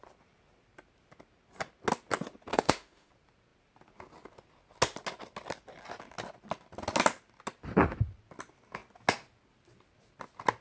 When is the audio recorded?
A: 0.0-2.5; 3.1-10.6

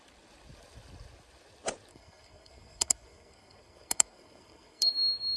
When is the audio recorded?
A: 0.0-1.9; 4.9-5.4

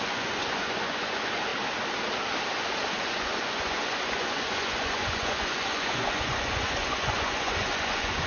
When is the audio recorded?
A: 1.5-3.0

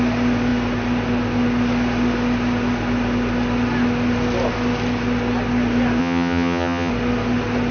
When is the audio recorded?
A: 0.0-6.0; 6.9-7.7

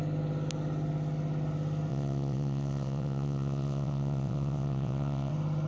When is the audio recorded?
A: 0.0-1.9; 5.3-5.7

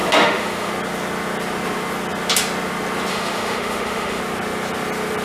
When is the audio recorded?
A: 0.7-3.1; 4.2-5.2